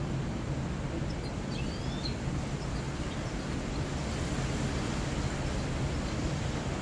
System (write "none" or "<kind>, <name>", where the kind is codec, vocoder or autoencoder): none